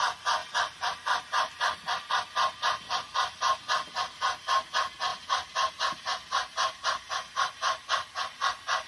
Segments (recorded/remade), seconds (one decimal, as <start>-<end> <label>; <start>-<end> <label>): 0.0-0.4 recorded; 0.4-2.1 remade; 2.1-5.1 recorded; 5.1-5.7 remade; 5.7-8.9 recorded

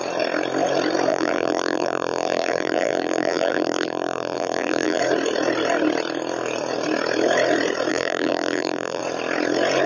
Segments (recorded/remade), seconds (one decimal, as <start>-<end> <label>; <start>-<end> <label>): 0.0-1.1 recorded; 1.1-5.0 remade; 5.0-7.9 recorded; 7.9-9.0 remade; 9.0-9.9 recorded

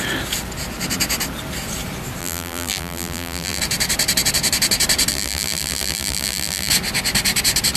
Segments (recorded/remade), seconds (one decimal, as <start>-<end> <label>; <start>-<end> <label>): 0.0-2.2 recorded; 2.2-3.6 remade; 3.6-5.1 recorded; 5.1-6.7 remade; 6.7-7.8 recorded

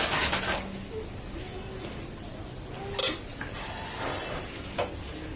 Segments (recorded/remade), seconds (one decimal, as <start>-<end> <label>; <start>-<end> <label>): 0.0-3.0 recorded; 3.0-4.5 remade; 4.5-5.4 recorded

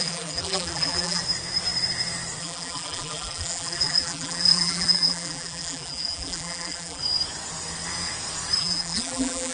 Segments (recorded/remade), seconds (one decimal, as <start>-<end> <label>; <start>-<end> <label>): 0.0-1.2 remade; 1.2-2.4 recorded; 2.4-7.0 remade; 7.0-8.6 recorded; 8.6-9.5 remade

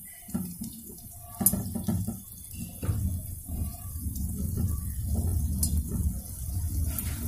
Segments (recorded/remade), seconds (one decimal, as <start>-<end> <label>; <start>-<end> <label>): 0.0-1.1 remade; 1.1-3.2 recorded; 3.2-4.3 remade; 4.3-7.3 recorded